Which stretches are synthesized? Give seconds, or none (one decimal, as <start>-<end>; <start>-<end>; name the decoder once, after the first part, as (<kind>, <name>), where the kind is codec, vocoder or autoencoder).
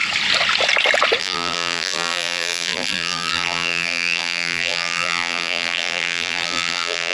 1.2-7.1 (vocoder, BigVGAN v2)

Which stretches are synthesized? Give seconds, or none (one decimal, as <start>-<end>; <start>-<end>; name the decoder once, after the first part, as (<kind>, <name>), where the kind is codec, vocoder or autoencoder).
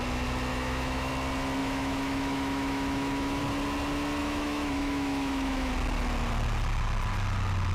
0.5-1.1 (autoencoder, DAC-VAE); 1.6-3.4; 4.2-5.7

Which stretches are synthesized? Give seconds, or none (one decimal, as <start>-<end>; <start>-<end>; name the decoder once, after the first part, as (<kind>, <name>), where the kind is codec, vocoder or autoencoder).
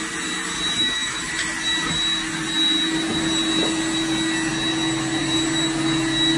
0.8-1.3 (autoencoder, DAC-VAE)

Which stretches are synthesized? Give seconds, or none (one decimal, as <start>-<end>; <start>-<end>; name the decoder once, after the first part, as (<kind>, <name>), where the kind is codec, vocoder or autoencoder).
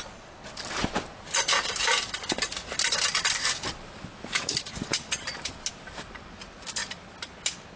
4.1-4.7 (autoencoder, DAC-VAE)